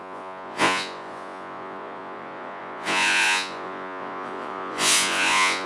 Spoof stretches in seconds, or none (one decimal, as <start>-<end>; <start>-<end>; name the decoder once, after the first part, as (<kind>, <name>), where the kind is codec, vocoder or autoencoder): 0.0-5.7 (vocoder, Vocos)